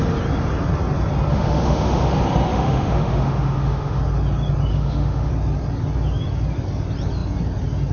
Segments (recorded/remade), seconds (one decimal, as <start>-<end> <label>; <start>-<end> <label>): 0.0-1.3 recorded; 1.3-2.1 remade; 2.1-2.5 recorded; 2.5-4.0 remade; 4.0-4.7 recorded; 4.7-5.3 remade; 5.3-7.9 recorded